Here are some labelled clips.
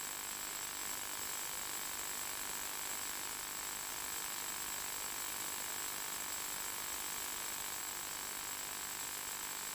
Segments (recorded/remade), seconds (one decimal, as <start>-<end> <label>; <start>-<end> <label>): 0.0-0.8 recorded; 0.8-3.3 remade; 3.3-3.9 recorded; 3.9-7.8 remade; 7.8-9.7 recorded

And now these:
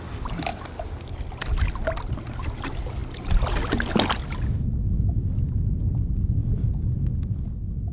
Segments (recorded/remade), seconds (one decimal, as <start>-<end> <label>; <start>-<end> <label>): 0.0-7.9 recorded

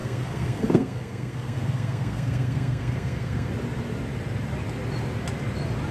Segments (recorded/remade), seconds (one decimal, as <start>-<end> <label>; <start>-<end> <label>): 0.0-3.5 remade; 3.5-5.9 recorded

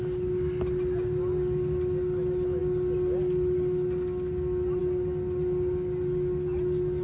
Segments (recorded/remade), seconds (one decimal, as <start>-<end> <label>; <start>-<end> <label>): 0.0-7.0 recorded